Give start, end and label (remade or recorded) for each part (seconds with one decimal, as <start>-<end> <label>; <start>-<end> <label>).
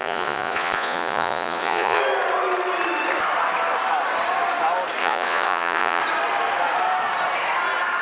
0.0-2.0 remade; 2.0-5.0 recorded; 5.0-6.0 remade; 6.0-8.0 recorded